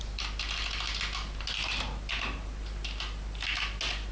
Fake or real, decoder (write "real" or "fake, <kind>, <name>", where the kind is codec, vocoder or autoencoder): real